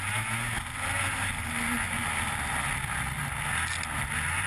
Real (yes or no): yes